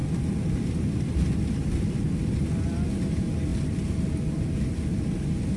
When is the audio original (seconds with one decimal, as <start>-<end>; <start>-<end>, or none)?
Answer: 0.0-5.6